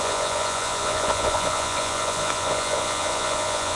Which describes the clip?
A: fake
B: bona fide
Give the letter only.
A